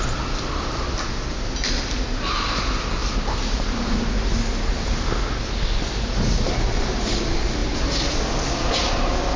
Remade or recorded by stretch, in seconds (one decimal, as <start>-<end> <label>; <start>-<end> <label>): 0.0-9.4 recorded

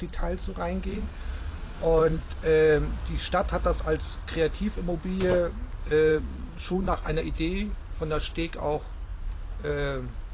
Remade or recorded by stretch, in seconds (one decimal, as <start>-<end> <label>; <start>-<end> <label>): 0.0-0.9 recorded; 0.9-2.3 remade; 2.3-6.1 recorded; 6.1-7.2 remade; 7.2-10.3 recorded

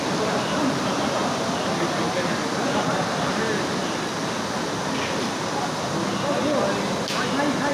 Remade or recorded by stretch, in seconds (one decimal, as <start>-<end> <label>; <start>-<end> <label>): 0.0-7.7 recorded

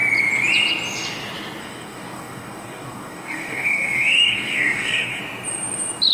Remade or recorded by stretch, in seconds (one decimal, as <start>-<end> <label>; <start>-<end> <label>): 0.0-1.6 recorded; 1.6-5.2 remade; 5.2-6.1 recorded

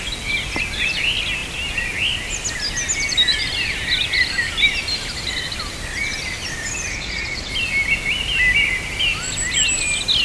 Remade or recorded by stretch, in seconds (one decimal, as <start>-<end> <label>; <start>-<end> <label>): 0.0-6.9 recorded; 6.9-7.5 remade; 7.5-10.2 recorded

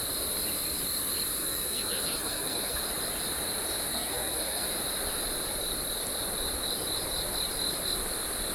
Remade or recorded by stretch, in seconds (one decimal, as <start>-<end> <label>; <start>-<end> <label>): 0.0-1.4 recorded; 1.4-2.8 remade; 2.8-3.9 recorded; 3.9-4.7 remade; 4.7-8.5 recorded

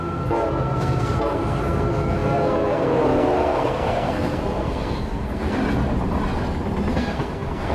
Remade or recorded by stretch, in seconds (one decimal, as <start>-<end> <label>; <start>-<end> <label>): 0.0-5.6 remade; 5.6-6.9 recorded; 6.9-7.7 remade

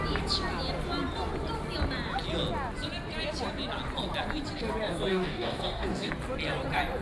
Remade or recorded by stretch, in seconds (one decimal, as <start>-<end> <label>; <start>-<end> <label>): 0.0-5.1 recorded; 5.1-6.1 remade; 6.1-7.0 recorded